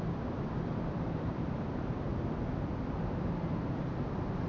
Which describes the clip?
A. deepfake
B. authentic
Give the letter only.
A